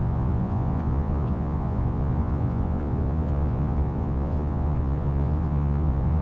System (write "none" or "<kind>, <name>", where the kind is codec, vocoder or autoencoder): vocoder, Vocos